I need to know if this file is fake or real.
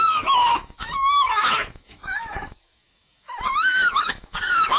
fake